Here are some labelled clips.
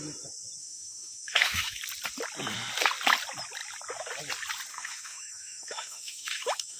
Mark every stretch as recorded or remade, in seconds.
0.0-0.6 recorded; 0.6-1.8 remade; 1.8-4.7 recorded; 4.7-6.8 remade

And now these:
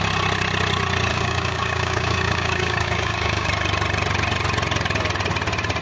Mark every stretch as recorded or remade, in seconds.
0.0-1.1 recorded; 1.1-3.5 remade; 3.5-5.8 recorded

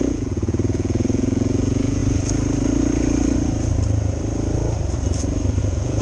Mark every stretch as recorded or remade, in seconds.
0.0-2.0 remade; 2.0-5.6 recorded; 5.6-6.0 remade

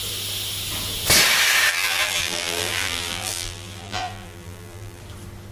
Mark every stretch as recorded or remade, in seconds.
0.0-1.7 recorded; 1.7-5.0 remade; 5.0-5.5 recorded

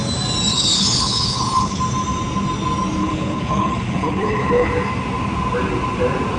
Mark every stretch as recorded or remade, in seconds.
0.0-0.5 recorded; 0.5-1.8 remade; 1.8-3.0 recorded; 3.0-4.7 remade; 4.7-6.4 recorded